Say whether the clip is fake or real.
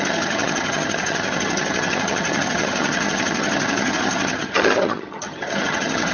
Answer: fake